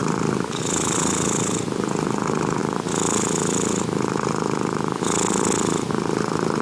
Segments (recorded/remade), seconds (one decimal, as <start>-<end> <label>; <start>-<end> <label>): 0.0-6.6 recorded